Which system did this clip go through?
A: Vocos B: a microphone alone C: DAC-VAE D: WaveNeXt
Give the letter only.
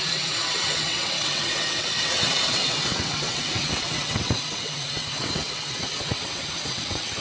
D